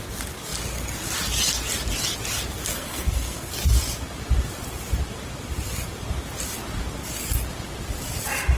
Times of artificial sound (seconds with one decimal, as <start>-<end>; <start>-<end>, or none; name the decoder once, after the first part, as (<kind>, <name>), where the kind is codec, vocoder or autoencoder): 2.7-3.5 (codec, SNAC)